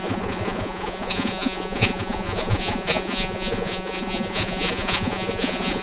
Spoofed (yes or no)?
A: yes